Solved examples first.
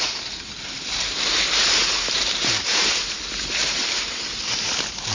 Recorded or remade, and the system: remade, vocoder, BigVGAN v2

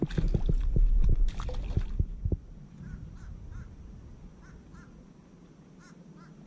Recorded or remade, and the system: recorded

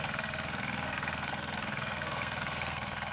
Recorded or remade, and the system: remade, codec, SNAC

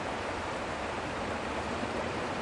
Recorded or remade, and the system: remade, vocoder, BigVGAN v2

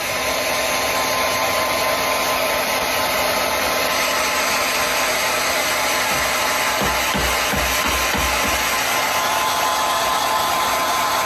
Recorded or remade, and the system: recorded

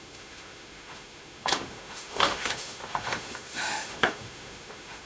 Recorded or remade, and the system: remade, autoencoder, DAC-VAE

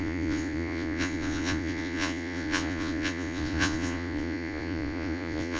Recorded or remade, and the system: remade, vocoder, Vocos